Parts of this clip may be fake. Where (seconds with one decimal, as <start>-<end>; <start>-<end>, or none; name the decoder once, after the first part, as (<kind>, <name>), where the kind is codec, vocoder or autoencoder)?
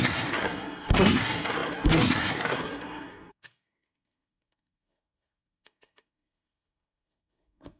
0.0-7.8 (codec, SNAC)